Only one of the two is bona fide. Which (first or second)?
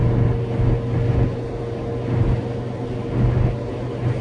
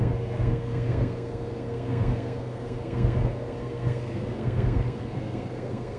first